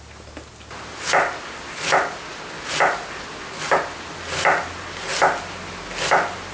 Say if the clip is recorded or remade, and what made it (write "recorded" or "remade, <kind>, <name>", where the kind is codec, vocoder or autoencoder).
recorded